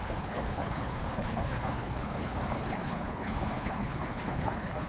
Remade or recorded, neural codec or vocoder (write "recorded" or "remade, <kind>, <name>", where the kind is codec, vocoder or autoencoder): remade, codec, HILCodec